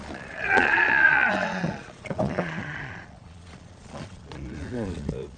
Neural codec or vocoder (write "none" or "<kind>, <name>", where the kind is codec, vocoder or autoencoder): vocoder, Vocos